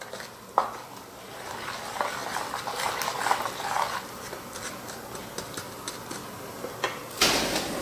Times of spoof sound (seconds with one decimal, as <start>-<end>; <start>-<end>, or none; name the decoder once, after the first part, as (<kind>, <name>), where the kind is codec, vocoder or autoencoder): none